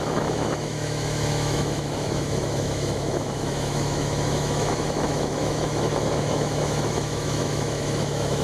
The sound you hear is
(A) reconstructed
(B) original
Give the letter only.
A